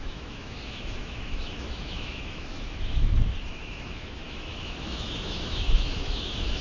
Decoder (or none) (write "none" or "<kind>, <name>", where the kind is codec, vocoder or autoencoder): autoencoder, DAC-VAE